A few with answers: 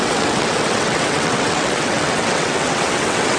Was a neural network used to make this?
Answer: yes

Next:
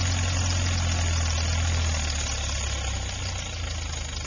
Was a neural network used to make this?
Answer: no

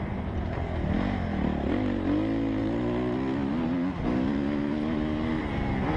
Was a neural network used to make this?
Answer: no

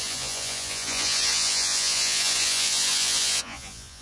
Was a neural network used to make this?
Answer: yes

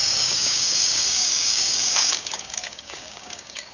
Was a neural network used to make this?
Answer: yes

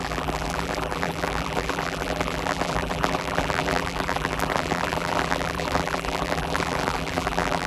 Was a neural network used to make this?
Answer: yes